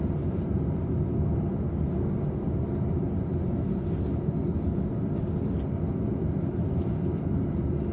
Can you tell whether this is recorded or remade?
recorded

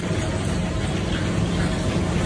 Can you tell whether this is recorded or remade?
recorded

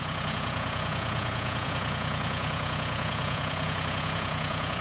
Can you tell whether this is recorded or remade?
remade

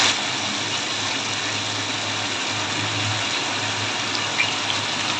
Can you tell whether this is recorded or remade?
recorded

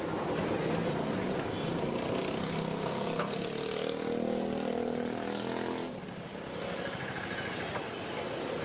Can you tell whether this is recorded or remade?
recorded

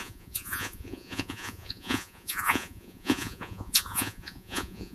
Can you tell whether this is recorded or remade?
remade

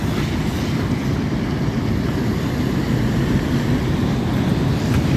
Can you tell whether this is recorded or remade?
recorded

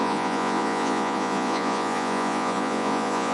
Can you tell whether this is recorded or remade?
remade